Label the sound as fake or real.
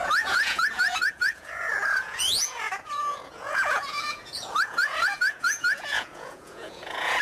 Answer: fake